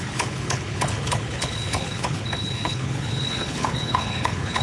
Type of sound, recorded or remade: remade